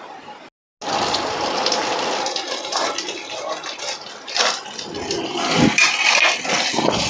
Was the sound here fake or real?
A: real